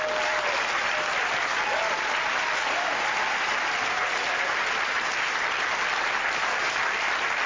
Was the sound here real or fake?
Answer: fake